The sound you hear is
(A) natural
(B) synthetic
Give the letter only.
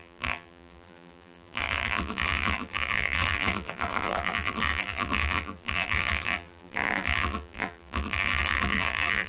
B